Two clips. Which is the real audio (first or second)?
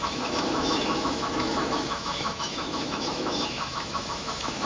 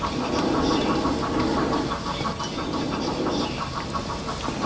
second